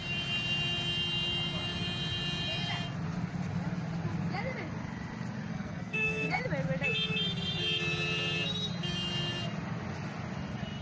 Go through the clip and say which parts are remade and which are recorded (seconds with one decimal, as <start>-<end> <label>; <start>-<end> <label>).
0.0-5.5 recorded; 5.5-6.4 remade; 6.4-10.8 recorded